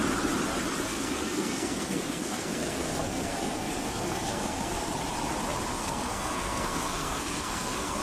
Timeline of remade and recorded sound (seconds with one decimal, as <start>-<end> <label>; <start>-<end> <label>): 0.0-0.9 recorded; 0.9-4.9 remade; 4.9-5.7 recorded; 5.7-8.0 remade